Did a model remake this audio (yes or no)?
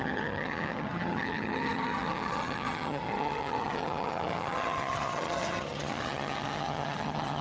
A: yes